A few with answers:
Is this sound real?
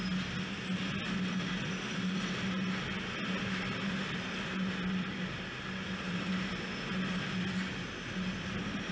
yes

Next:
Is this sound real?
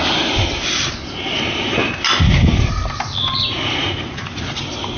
yes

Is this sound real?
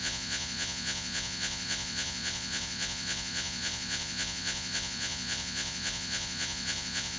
no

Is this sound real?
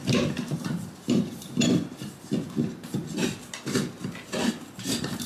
yes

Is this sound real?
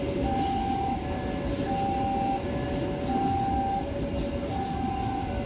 yes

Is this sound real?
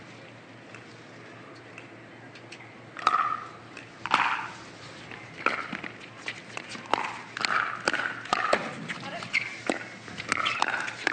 yes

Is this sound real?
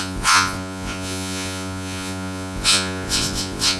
no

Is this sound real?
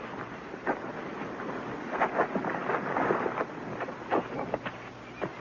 yes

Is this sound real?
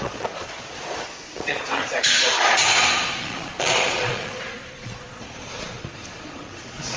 no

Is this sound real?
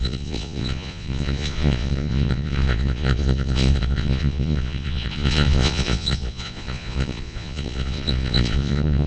no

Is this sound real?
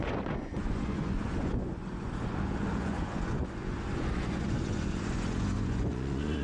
no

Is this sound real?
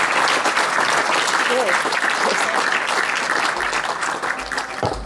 yes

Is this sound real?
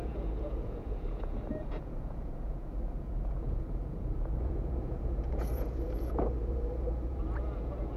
no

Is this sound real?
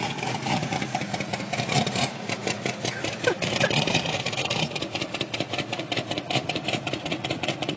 no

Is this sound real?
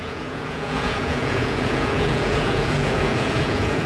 no